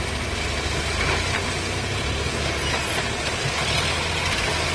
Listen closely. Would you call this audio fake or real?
real